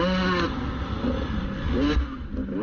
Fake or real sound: real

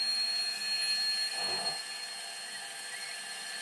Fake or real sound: real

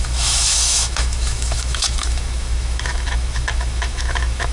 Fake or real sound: fake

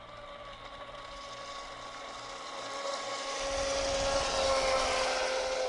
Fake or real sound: real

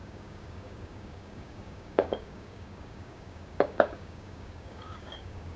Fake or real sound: fake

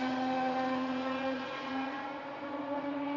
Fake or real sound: fake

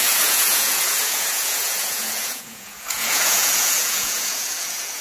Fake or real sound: fake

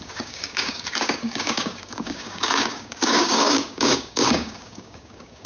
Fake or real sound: fake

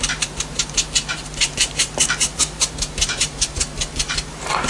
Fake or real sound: fake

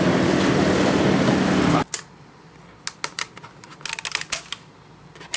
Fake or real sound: real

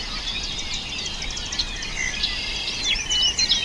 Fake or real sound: real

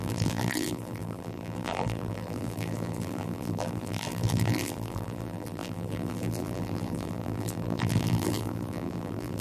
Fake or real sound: fake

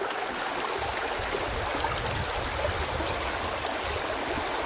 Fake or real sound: real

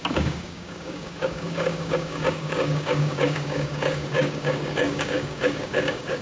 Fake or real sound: fake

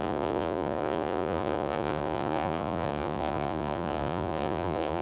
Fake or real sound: fake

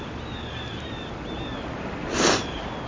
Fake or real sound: real